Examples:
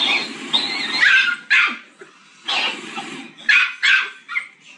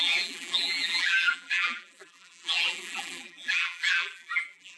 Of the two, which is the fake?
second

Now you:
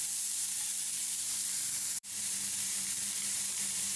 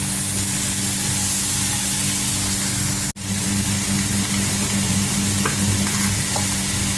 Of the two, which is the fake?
first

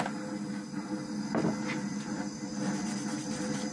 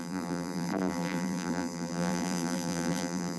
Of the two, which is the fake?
second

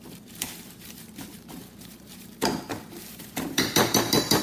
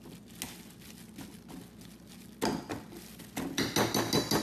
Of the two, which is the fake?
first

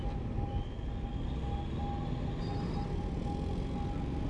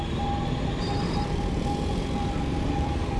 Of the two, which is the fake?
second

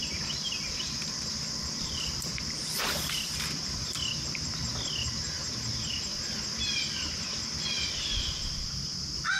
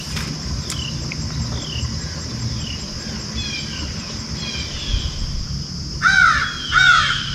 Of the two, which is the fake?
first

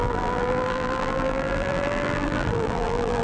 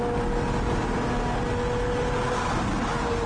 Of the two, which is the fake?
first